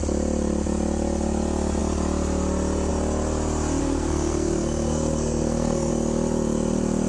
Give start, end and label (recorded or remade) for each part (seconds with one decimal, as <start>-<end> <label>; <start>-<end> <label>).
0.0-3.8 recorded; 3.8-5.9 remade; 5.9-7.1 recorded